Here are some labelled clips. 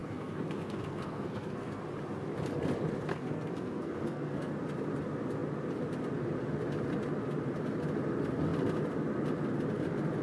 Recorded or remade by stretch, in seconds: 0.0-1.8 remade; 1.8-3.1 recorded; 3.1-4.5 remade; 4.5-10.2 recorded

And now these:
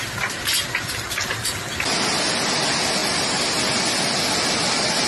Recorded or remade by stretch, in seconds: 0.0-5.1 recorded

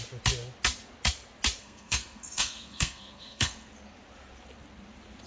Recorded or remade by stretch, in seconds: 0.0-1.6 recorded; 1.6-3.7 remade; 3.7-5.3 recorded

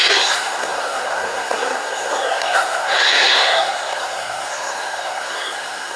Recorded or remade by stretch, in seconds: 0.0-6.0 remade

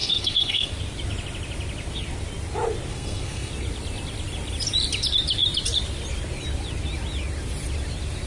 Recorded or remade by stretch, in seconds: 0.0-0.7 remade; 0.7-2.9 recorded; 2.9-3.5 remade; 3.5-8.3 recorded

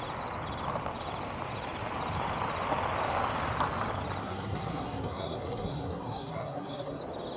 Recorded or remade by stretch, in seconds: 0.0-4.2 recorded; 4.2-7.0 remade; 7.0-7.4 recorded

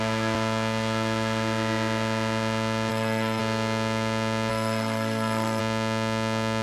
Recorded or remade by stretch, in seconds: 0.0-2.9 recorded; 2.9-3.4 remade; 3.4-4.5 recorded; 4.5-5.6 remade; 5.6-6.6 recorded